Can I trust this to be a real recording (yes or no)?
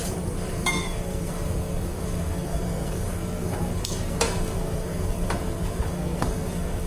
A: no